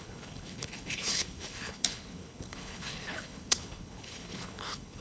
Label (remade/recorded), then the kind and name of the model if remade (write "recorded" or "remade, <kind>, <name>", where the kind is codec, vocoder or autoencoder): remade, codec, HILCodec